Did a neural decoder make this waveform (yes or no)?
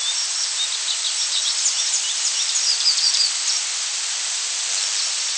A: no